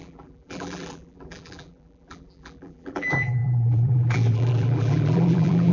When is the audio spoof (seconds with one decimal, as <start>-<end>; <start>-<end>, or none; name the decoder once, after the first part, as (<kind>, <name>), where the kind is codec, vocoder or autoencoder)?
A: 0.0-5.7 (vocoder, BigVGAN v2)